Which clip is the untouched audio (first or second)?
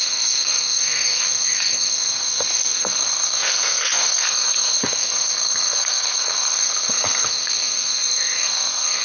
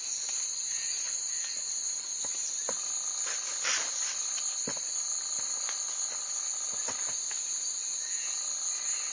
second